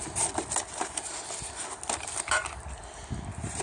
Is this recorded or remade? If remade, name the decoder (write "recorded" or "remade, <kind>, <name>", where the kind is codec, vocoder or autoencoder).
recorded